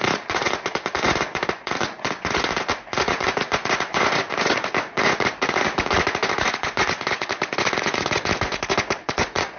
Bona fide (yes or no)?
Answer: no